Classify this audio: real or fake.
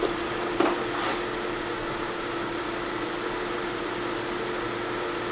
real